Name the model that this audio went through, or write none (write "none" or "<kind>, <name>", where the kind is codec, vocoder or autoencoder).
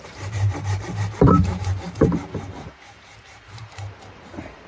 vocoder, BigVGAN v2